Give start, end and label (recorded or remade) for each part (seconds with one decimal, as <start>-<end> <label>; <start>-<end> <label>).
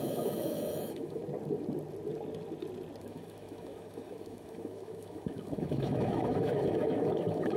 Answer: 0.0-1.2 remade; 1.2-3.0 recorded; 3.0-7.6 remade